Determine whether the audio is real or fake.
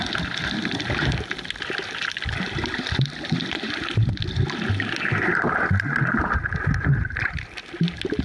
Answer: real